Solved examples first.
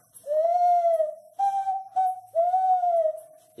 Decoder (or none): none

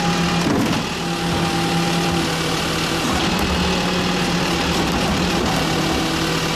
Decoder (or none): none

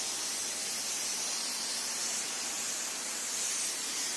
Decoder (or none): none